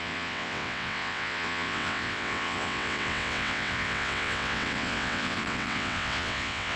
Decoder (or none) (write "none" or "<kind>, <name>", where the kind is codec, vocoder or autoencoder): vocoder, WaveNeXt